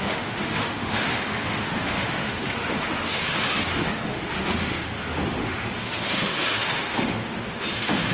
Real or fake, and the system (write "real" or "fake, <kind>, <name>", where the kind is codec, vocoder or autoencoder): fake, autoencoder, DAC-VAE